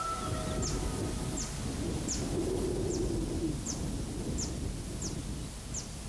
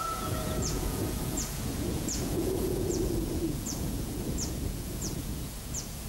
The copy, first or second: second